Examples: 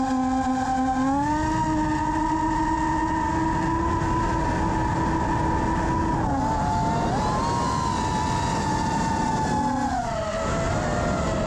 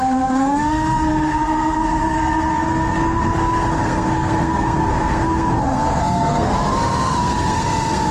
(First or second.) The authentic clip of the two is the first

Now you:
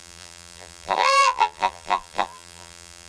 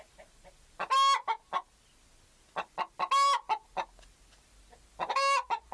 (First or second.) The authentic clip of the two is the second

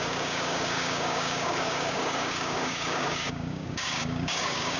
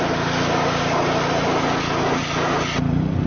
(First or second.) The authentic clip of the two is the second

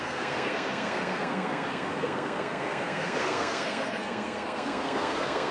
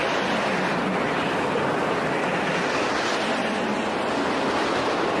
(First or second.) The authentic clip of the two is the second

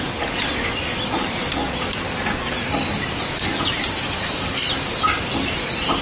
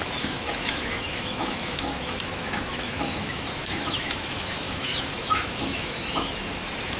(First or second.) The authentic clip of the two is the first